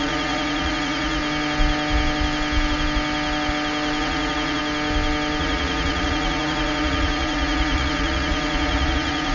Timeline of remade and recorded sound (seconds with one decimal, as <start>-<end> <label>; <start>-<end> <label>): 0.0-1.2 remade; 1.2-4.0 recorded; 4.0-4.6 remade; 4.6-5.4 recorded; 5.4-9.3 remade